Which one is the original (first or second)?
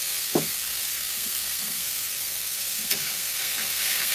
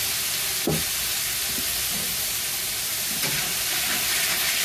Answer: second